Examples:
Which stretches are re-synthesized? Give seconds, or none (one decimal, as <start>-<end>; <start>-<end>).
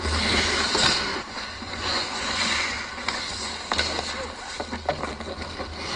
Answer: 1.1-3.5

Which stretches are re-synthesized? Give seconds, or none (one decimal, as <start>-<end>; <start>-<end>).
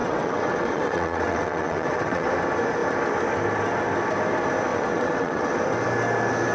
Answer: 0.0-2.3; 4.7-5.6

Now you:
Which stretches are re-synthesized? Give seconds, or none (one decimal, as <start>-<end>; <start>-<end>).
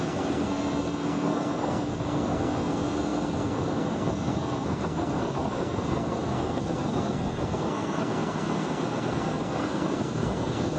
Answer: 0.0-10.8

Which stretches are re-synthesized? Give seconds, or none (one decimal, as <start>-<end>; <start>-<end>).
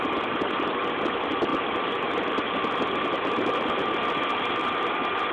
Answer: none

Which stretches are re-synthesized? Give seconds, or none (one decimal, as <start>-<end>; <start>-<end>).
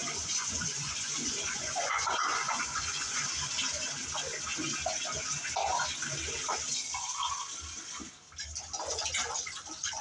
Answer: 0.0-3.2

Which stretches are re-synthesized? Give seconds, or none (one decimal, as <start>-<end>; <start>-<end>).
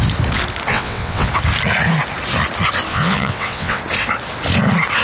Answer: 0.7-1.3; 2.9-3.8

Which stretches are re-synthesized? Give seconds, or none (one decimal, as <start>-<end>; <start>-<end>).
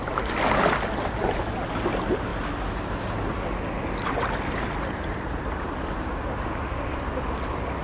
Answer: none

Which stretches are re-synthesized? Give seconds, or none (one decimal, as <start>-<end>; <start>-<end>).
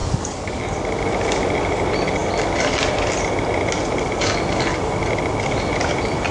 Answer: 0.0-0.6